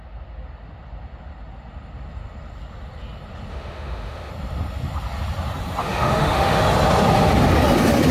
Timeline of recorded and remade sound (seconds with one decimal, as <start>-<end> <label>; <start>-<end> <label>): 0.0-3.5 recorded; 3.5-4.3 remade; 4.3-5.8 recorded; 5.8-6.6 remade; 6.6-8.1 recorded